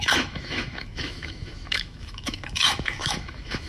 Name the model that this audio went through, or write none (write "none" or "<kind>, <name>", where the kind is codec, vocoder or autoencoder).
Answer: autoencoder, DAC-VAE